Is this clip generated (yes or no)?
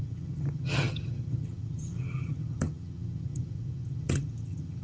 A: yes